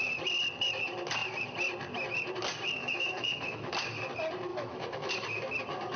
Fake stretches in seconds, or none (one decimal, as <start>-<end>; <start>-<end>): 2.8-3.7; 4.5-5.1